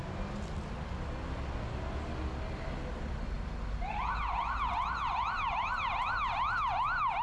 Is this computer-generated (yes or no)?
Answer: no